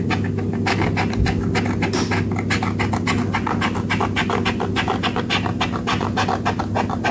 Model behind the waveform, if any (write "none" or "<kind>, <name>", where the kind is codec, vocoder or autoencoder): none